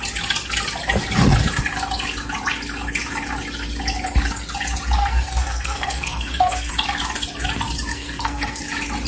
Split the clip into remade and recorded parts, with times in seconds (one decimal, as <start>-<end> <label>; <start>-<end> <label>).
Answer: 0.0-5.0 recorded; 5.0-6.7 remade; 6.7-7.9 recorded; 7.9-8.6 remade; 8.6-9.1 recorded